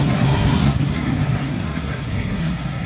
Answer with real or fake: fake